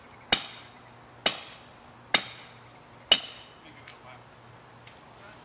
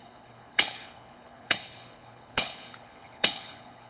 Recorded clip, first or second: first